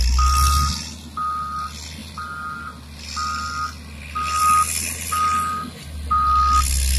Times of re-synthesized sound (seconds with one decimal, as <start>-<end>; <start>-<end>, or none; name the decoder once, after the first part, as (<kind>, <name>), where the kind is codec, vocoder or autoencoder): none